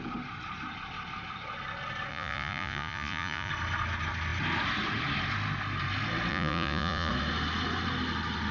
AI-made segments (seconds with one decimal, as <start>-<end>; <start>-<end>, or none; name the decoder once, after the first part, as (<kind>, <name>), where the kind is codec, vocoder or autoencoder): 2.1-3.5 (vocoder, Vocos); 6.3-7.1